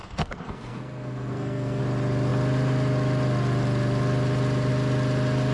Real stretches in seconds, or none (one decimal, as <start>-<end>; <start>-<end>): 1.8-5.5